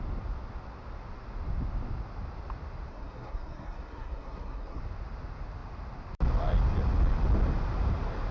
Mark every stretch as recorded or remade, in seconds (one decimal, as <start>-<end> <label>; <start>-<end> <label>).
0.0-2.9 recorded; 2.9-4.8 remade; 4.8-8.3 recorded